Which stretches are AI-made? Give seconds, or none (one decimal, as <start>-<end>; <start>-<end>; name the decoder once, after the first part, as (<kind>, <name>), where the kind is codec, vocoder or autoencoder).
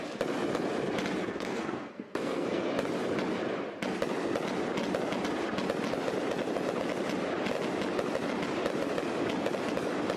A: 1.2-2.7 (codec, SNAC)